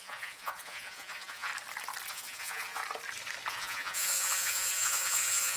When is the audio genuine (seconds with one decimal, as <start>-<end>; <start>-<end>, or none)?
1.5-2.1; 2.8-3.5